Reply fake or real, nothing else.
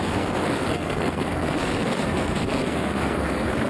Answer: fake